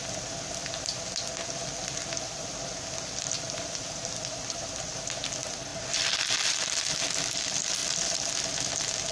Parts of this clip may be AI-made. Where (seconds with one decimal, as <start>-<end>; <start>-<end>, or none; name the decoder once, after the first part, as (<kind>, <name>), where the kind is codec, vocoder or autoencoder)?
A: 0.6-5.2 (vocoder, BigVGAN v2); 5.7-7.0; 7.8-8.4